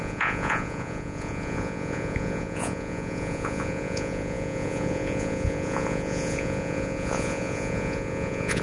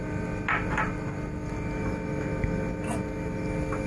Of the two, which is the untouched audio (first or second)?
second